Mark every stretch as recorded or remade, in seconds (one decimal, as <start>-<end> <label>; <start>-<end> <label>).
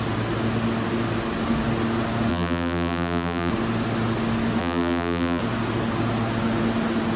0.0-2.3 recorded; 2.3-3.5 remade; 3.5-4.6 recorded; 4.6-5.4 remade; 5.4-7.2 recorded